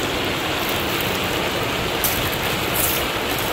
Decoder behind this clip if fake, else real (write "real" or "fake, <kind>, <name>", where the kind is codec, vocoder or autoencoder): real